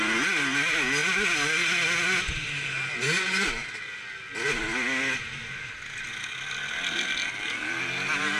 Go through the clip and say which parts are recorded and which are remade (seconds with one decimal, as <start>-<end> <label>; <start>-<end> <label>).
0.0-8.4 recorded